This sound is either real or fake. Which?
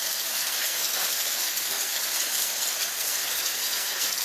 fake